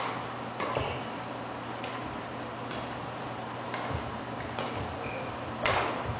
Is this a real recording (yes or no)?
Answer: yes